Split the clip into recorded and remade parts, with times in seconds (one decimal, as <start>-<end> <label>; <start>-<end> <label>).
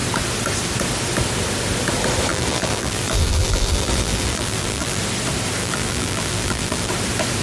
0.0-2.3 recorded; 2.3-5.0 remade; 5.0-5.6 recorded; 5.6-6.9 remade; 6.9-7.4 recorded